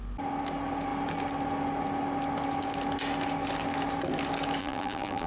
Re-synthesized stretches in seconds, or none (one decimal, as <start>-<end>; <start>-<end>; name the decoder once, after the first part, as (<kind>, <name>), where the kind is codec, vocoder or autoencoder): 4.6-5.3 (vocoder, BigVGAN v2)